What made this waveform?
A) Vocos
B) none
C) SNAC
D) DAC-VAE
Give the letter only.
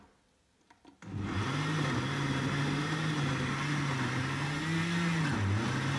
B